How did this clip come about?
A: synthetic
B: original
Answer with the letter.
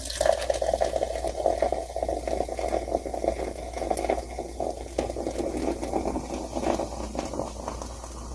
B